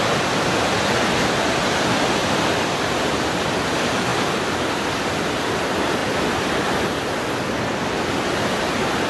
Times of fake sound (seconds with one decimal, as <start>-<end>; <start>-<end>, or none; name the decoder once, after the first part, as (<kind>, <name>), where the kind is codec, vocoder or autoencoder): 2.2-3.6 (vocoder, BigVGAN v2); 4.1-5.0; 6.0-7.9